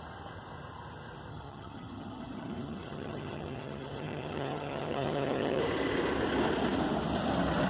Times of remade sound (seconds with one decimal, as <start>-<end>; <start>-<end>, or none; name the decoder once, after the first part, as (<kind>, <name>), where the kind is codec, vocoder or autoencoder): 1.3-5.6 (vocoder, HiFi-GAN)